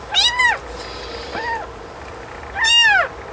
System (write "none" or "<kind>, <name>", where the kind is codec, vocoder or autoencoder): none